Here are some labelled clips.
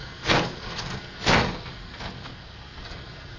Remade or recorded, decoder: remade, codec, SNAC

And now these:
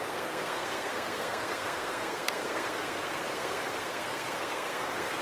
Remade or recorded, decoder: remade, codec, SNAC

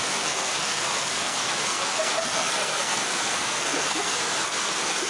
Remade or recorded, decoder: remade, codec, SNAC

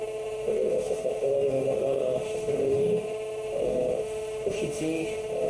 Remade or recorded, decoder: remade, autoencoder, DAC-VAE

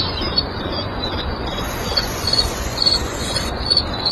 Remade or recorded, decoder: remade, vocoder, Vocos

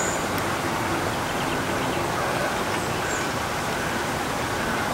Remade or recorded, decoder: recorded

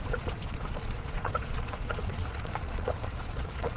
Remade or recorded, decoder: remade, vocoder, Vocos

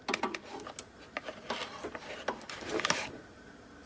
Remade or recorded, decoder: recorded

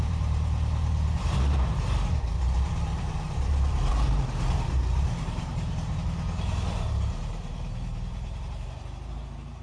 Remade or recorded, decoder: remade, vocoder, BigVGAN v2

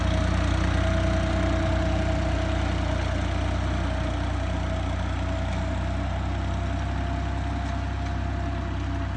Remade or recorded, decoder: recorded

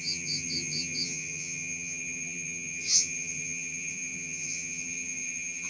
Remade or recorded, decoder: remade, vocoder, HiFi-GAN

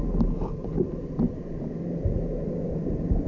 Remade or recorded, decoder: recorded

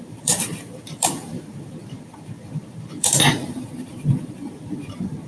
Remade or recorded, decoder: remade, vocoder, BigVGAN v2